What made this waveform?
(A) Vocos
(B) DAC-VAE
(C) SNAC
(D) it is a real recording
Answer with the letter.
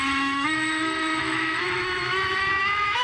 B